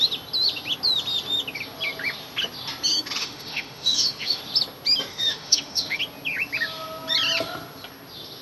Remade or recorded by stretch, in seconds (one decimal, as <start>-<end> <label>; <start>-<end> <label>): 0.0-3.2 recorded; 3.2-4.4 remade; 4.4-5.1 recorded; 5.1-6.0 remade; 6.0-8.4 recorded

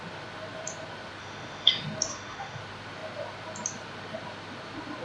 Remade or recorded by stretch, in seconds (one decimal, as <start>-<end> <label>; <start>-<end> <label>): 0.0-1.2 recorded; 1.2-1.7 remade; 1.7-2.1 recorded; 2.1-2.6 remade; 2.6-5.0 recorded

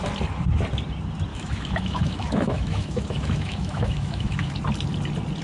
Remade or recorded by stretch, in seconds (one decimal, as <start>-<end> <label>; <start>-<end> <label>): 0.0-1.3 recorded; 1.3-4.5 remade; 4.5-5.4 recorded

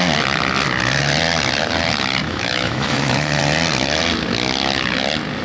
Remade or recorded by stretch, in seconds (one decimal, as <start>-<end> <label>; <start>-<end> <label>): 0.0-2.2 recorded; 2.2-3.4 remade; 3.4-5.4 recorded